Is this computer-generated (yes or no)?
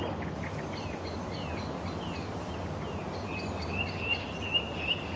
no